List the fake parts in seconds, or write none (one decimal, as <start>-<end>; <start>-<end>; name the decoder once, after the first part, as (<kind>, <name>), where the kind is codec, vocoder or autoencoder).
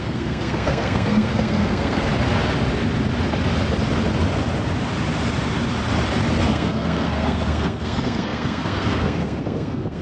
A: 0.0-2.1 (codec, SNAC); 6.5-10.0